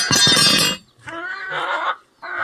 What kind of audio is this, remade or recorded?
recorded